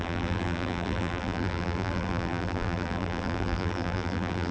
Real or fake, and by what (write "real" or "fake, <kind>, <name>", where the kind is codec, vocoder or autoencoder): fake, vocoder, BigVGAN v2